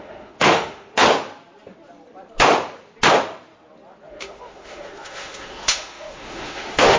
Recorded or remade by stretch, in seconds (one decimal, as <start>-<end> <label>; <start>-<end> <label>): 0.0-1.0 remade; 1.0-4.1 recorded; 4.1-7.0 remade